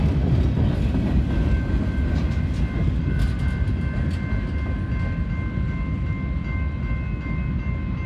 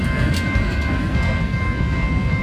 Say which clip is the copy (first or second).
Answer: second